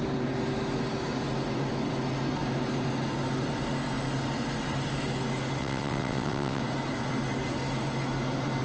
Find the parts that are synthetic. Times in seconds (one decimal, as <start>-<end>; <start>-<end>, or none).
5.6-6.6